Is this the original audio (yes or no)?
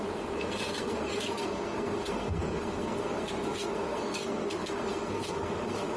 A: no